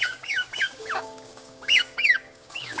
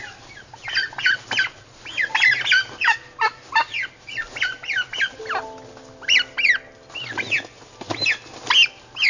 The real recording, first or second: second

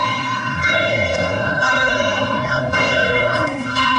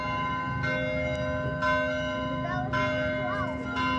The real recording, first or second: second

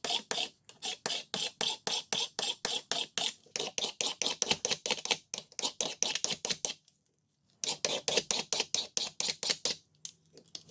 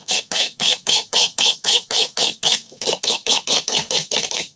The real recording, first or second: first